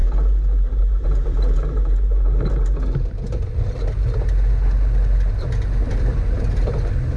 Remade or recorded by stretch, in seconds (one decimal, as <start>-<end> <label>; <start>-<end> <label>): 0.0-7.2 recorded